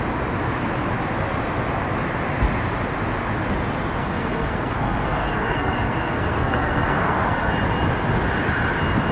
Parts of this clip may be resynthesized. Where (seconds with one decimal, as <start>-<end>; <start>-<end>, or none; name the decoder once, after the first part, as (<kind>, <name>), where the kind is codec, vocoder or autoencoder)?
4.0-7.5 (codec, SNAC)